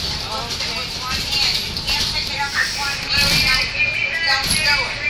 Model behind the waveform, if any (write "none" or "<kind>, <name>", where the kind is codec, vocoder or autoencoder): none